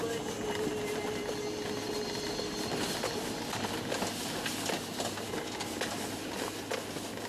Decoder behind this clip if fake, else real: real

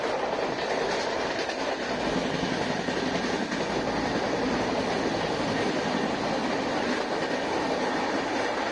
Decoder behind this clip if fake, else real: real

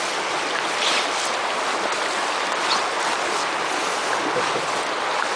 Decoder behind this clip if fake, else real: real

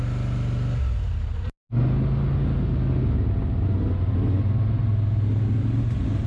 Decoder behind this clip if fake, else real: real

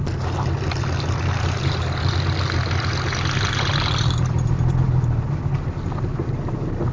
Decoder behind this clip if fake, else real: real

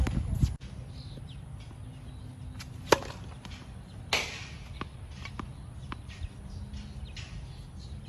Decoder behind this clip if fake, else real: real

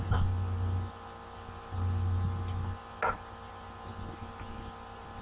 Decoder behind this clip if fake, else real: real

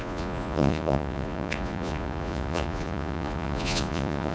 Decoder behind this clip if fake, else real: fake, vocoder, Vocos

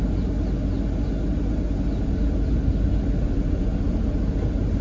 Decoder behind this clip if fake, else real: real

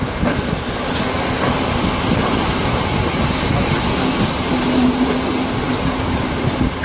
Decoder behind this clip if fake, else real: real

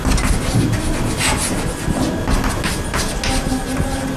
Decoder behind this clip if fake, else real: real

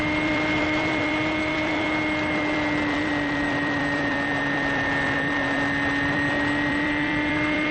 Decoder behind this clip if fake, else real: fake, vocoder, BigVGAN v2